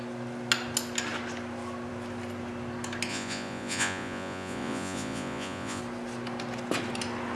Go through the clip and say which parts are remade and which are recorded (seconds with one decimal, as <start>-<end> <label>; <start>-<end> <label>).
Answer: 0.0-3.1 recorded; 3.1-5.8 remade; 5.8-7.4 recorded